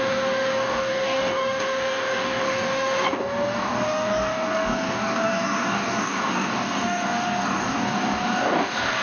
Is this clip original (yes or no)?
no